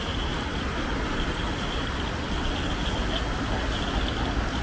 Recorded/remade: recorded